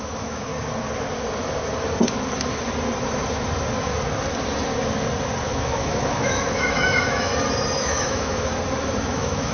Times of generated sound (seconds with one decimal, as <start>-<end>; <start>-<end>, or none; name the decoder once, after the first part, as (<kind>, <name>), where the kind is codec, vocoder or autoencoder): 0.0-0.5 (autoencoder, DAC-VAE); 5.5-7.3; 7.8-8.5; 9.1-9.5